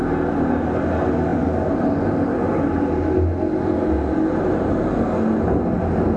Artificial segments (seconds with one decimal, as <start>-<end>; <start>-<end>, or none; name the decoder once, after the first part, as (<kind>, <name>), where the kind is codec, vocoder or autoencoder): none